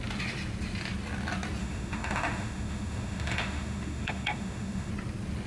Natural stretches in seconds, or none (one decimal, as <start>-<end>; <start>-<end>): 0.0-1.6; 4.9-5.5